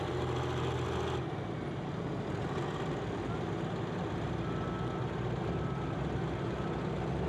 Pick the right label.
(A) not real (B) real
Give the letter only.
B